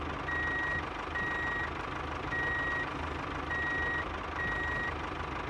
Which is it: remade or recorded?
recorded